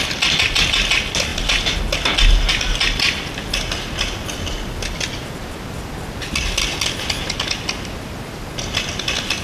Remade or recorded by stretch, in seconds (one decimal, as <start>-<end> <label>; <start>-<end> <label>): 0.0-9.4 recorded